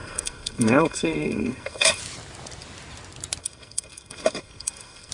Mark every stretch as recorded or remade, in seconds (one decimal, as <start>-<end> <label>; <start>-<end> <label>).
0.0-2.0 remade; 2.0-3.4 recorded; 3.4-5.1 remade

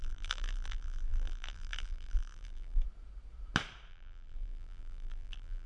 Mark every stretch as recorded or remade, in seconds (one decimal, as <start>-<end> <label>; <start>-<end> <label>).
0.0-2.8 remade; 2.8-3.9 recorded; 3.9-5.7 remade